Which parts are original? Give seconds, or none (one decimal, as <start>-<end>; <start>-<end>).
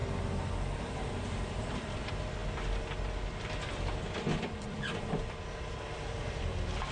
0.0-0.5; 2.4-4.0